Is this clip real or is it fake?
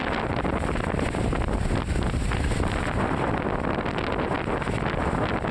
real